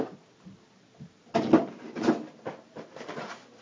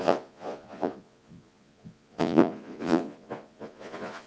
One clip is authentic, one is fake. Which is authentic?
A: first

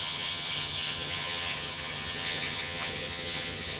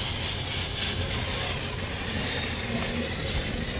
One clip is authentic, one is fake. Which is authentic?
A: second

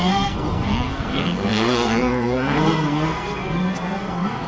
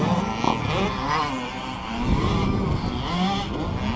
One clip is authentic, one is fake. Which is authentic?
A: second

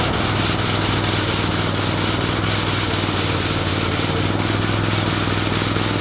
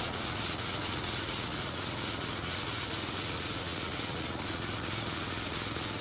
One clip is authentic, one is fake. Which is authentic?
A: first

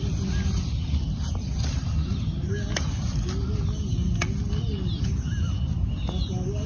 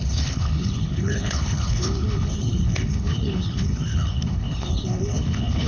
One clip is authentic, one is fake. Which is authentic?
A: first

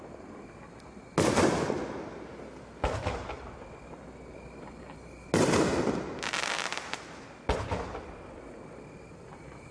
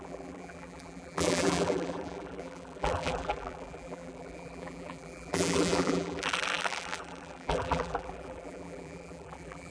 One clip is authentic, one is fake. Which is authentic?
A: first